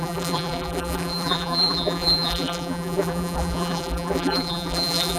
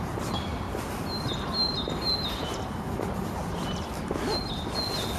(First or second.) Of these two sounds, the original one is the second